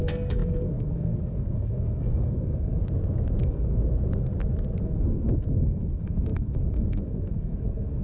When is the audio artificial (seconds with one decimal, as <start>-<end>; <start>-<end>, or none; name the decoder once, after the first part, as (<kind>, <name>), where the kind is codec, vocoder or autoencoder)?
0.0-2.8 (codec, SNAC); 3.4-3.8; 4.8-8.0